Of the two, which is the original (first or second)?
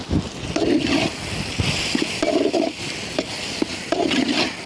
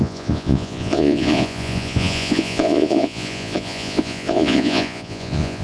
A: first